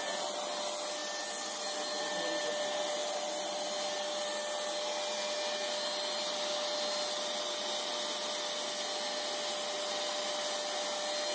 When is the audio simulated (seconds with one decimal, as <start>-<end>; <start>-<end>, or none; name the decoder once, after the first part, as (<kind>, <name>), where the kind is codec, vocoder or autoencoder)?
none